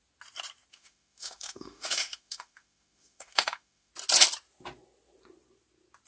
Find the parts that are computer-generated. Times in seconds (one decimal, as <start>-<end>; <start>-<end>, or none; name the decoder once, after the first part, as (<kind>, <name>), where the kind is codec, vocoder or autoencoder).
0.7-3.9 (autoencoder, DAC-VAE)